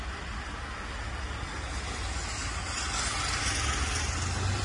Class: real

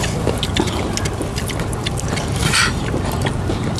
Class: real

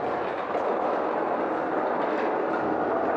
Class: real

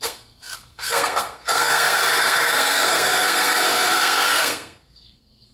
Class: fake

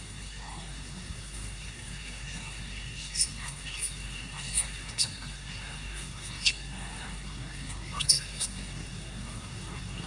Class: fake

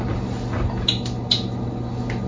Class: real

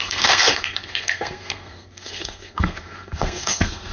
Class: fake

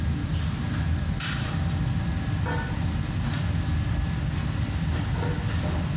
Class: real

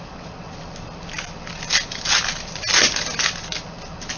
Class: real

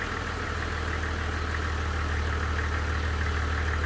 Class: real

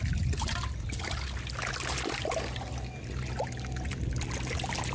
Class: real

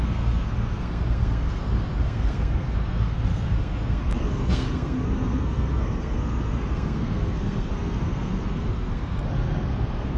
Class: fake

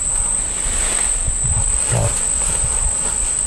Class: real